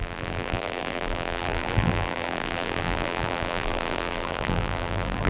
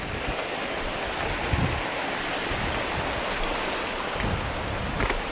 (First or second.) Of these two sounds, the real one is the second